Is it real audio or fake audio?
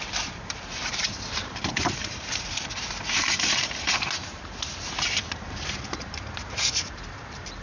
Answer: fake